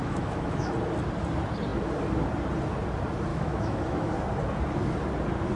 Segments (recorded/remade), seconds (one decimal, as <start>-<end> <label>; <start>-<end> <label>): 0.0-0.7 remade; 0.7-3.3 recorded; 3.3-4.1 remade; 4.1-5.6 recorded

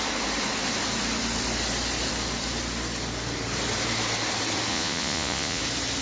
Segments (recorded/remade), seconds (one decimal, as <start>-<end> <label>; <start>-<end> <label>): 0.0-4.7 recorded; 4.7-5.6 remade; 5.6-6.0 recorded

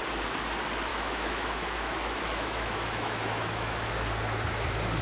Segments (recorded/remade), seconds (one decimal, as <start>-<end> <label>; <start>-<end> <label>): 0.0-0.9 recorded; 0.9-3.9 remade; 3.9-5.0 recorded